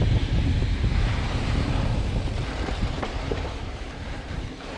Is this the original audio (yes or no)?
no